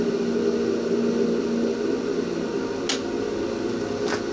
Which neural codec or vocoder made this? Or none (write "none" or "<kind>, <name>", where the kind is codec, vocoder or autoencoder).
none